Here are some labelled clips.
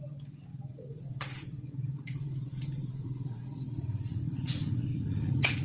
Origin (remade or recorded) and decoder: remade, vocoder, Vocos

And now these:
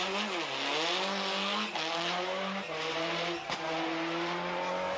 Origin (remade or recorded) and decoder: recorded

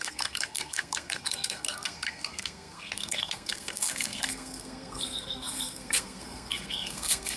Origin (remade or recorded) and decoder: remade, codec, SNAC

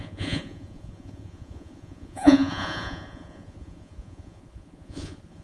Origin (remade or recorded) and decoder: remade, vocoder, Vocos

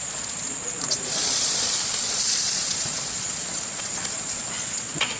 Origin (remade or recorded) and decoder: remade, vocoder, Vocos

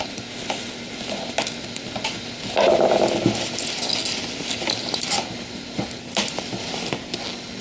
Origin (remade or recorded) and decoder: recorded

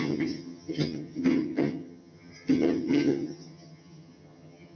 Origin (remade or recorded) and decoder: remade, vocoder, HiFi-GAN